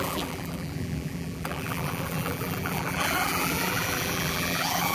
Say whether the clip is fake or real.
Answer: fake